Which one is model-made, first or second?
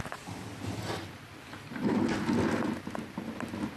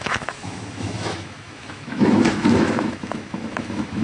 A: second